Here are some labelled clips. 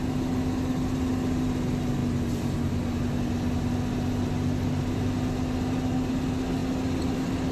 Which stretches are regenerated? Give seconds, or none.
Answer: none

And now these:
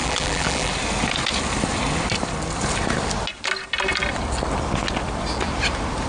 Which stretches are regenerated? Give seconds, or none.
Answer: 0.0-0.7 (vocoder, BigVGAN v2)

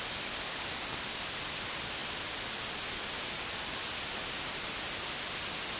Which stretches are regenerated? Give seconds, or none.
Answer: none